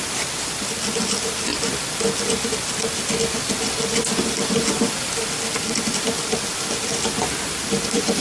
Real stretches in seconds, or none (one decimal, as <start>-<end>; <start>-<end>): 0.0-8.2